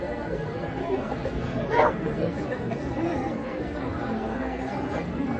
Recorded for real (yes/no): no